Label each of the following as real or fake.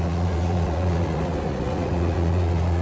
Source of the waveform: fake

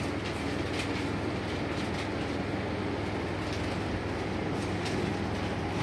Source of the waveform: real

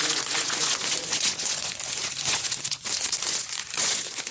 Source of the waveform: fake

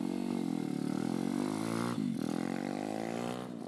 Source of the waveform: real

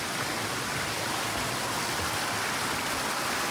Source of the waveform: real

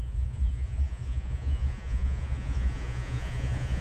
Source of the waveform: fake